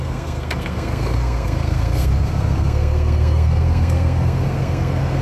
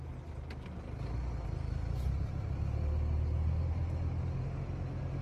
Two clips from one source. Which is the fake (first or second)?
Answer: first